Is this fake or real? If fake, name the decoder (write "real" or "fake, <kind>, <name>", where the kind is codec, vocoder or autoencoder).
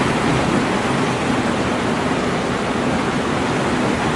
real